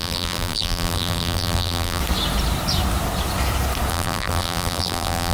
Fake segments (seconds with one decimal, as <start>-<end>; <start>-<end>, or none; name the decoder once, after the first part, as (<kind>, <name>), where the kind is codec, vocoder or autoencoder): 0.0-2.0 (vocoder, BigVGAN v2); 3.9-5.3